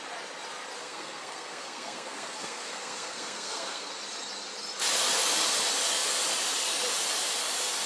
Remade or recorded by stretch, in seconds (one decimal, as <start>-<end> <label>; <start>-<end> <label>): 0.0-0.8 recorded; 0.8-3.9 remade; 3.9-7.9 recorded